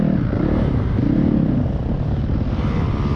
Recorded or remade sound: recorded